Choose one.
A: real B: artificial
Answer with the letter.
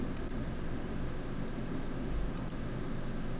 A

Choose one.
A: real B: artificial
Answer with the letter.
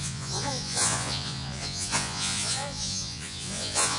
B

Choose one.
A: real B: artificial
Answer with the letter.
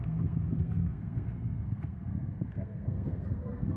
B